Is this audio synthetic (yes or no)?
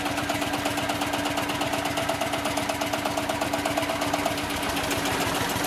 no